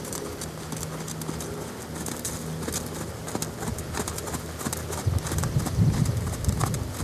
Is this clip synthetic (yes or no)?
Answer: no